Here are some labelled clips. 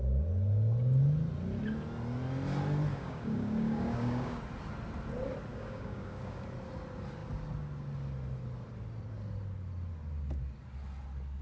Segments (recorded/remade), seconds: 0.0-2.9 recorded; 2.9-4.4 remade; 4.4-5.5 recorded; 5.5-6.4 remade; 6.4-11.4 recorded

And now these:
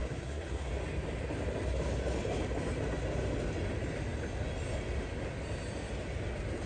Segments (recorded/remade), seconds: 0.0-0.7 remade; 0.7-6.7 recorded

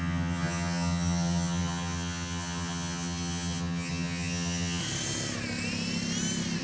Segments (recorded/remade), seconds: 0.0-4.8 remade; 4.8-6.6 recorded

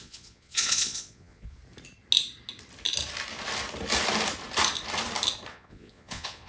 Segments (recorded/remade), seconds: 0.0-1.6 remade; 1.6-5.5 recorded; 5.5-6.5 remade

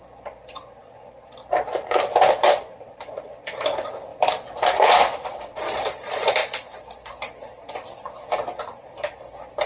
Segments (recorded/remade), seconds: 0.0-4.1 remade; 4.1-4.9 recorded; 4.9-6.4 remade; 6.4-7.1 recorded; 7.1-9.7 remade

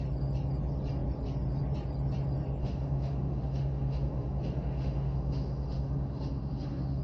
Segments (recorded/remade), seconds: 0.0-2.6 recorded; 2.6-7.0 remade